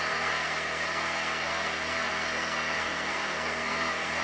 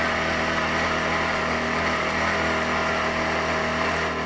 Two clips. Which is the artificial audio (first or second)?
first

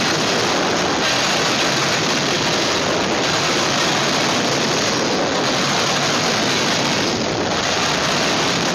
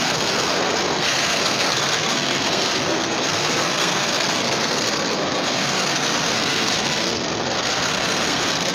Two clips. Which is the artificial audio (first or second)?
second